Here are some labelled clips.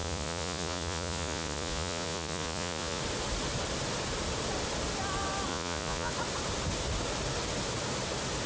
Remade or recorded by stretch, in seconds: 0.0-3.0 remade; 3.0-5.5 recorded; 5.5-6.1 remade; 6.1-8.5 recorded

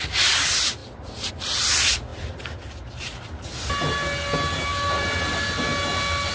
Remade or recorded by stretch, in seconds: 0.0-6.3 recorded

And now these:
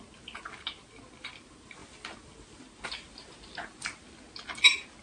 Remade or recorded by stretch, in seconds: 0.0-5.0 recorded